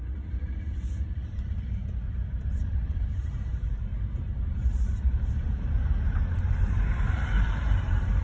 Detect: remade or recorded remade